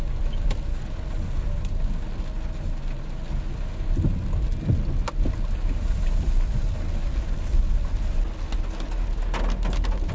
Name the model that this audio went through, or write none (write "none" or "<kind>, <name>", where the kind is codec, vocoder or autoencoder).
none